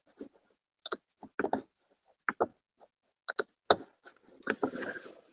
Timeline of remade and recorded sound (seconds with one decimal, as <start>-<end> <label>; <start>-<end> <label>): 0.0-5.3 recorded